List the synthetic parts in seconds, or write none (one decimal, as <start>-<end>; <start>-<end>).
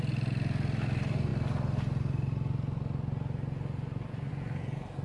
none